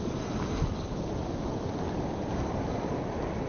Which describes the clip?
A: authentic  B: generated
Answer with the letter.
A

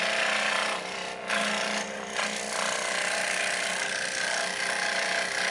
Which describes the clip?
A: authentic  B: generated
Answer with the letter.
A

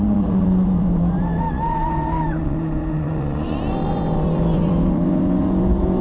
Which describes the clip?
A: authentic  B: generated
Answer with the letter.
B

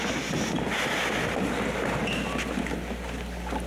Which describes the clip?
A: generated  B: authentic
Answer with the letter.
B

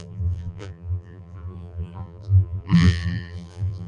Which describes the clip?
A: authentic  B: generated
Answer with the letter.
B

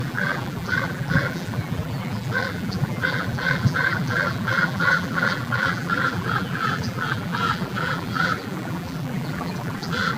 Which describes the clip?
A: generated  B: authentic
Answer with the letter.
A